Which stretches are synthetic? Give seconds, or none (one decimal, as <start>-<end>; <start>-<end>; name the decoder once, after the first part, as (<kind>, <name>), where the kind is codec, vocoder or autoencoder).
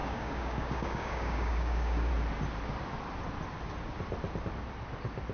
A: 0.0-2.1 (codec, DAC)